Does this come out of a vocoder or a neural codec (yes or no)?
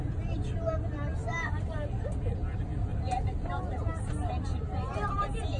no